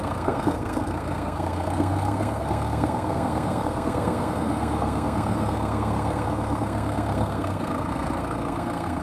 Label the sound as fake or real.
fake